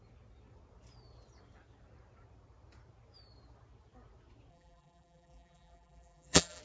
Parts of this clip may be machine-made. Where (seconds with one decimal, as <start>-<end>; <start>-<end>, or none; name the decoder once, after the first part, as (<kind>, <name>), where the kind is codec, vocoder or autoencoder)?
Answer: 4.5-6.6 (vocoder, BigVGAN v2)